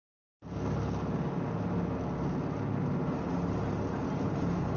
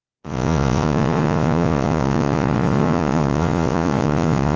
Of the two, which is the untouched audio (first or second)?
first